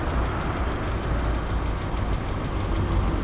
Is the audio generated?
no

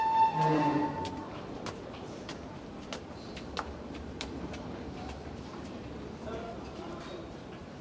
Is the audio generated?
yes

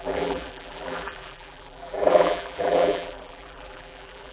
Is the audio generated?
yes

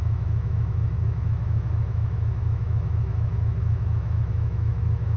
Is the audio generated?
yes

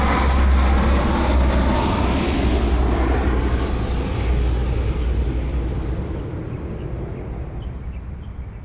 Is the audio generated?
no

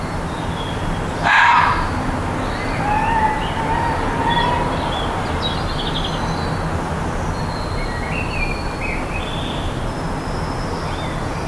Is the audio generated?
no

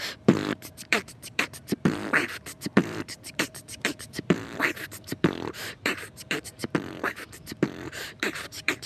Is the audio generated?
yes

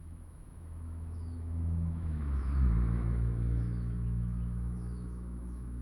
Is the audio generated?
yes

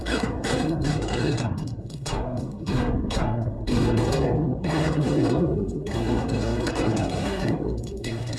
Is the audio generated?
yes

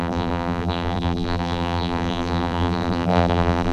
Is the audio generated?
yes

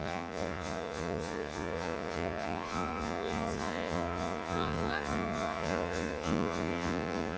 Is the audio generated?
yes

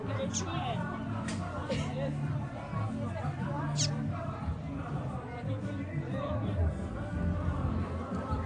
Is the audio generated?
no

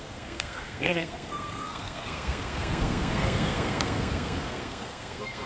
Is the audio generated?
yes